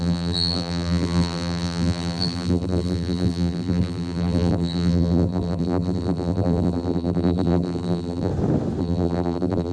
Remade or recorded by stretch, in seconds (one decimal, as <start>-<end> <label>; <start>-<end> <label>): 0.0-8.3 remade; 8.3-8.8 recorded; 8.8-9.7 remade